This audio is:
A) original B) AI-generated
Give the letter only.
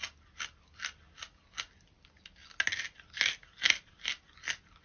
A